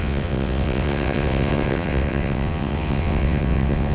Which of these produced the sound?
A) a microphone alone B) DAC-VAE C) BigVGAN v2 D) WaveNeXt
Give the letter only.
D